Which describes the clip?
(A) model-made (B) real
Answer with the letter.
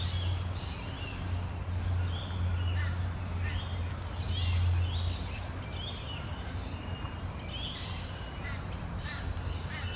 B